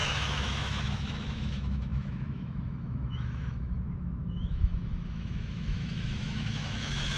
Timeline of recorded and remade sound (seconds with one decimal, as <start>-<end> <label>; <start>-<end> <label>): 0.0-7.2 remade